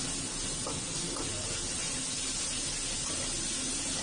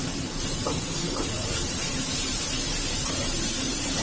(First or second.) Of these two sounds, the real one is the first